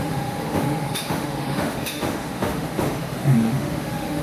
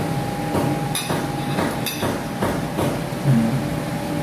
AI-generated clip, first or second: first